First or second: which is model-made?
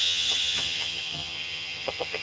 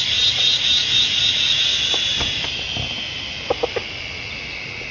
first